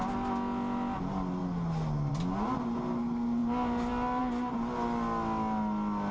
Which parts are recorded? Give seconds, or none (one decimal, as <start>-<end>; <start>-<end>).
0.0-6.1